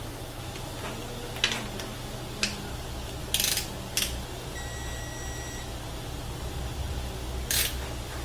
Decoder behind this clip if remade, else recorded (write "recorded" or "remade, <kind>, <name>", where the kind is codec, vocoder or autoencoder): recorded